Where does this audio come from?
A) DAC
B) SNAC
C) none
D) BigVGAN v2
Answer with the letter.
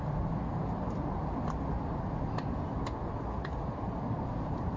C